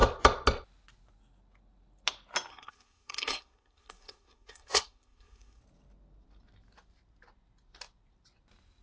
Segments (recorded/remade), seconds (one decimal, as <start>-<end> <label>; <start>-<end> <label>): 0.0-2.5 recorded; 2.5-5.6 remade; 5.6-8.8 recorded